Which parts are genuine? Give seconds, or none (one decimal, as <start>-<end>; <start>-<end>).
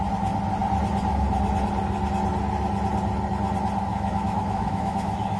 0.0-3.9